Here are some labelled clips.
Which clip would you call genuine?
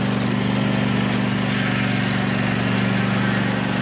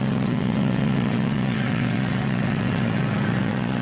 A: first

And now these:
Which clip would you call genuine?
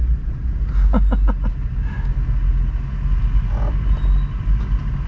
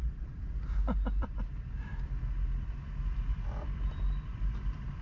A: first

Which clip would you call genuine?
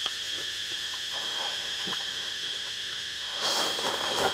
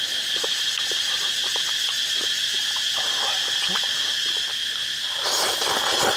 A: second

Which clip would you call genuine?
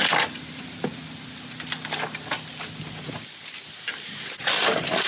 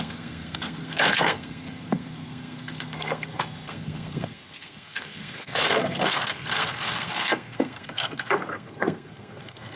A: first